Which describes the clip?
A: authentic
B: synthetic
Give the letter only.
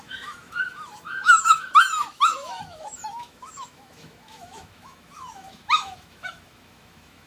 B